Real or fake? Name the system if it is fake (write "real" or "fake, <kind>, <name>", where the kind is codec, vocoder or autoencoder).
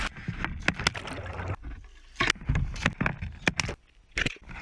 real